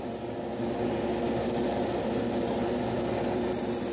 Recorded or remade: recorded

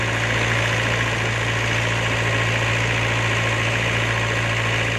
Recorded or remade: recorded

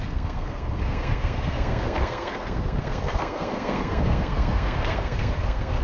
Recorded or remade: remade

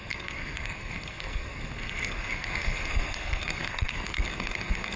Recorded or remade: remade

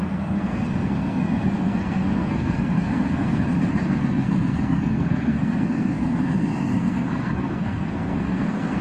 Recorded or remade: remade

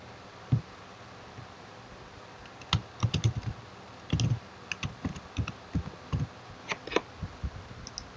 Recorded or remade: recorded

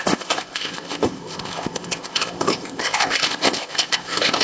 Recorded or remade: remade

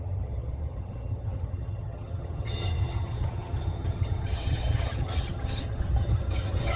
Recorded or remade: remade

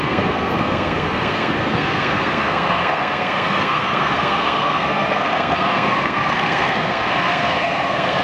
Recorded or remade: remade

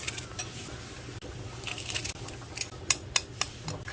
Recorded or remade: recorded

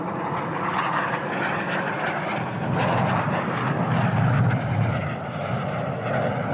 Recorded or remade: recorded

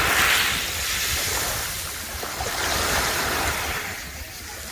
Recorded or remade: recorded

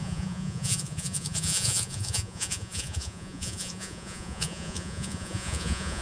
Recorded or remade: remade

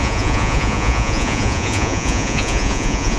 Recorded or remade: remade